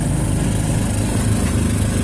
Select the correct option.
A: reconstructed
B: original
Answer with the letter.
B